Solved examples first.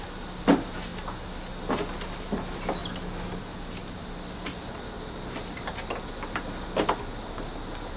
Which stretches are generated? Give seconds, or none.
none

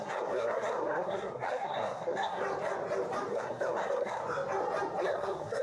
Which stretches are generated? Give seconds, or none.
0.0-2.4 (codec, SNAC); 3.3-4.2; 5.0-5.6

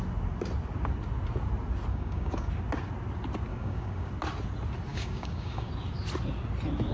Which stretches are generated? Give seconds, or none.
1.9-2.5 (codec, DAC); 3.5-4.1; 4.9-5.7

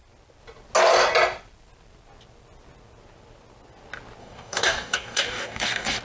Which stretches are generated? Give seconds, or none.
4.2-6.0 (codec, DAC)